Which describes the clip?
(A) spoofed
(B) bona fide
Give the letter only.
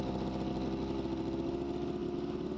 B